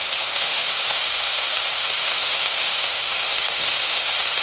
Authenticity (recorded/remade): remade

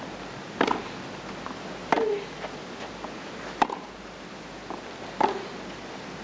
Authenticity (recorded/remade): recorded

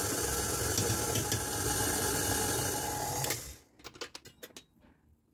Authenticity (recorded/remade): recorded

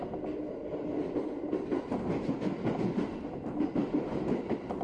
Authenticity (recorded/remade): recorded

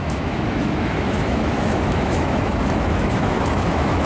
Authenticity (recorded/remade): remade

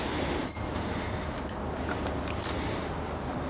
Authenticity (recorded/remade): recorded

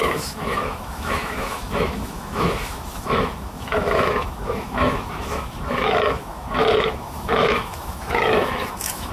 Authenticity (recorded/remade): remade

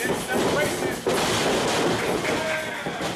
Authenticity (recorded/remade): recorded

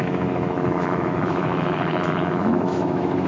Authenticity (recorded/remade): remade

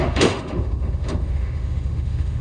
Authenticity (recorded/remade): remade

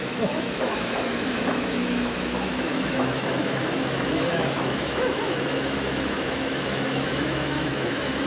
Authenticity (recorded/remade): remade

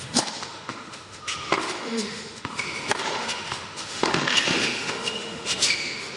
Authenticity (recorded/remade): remade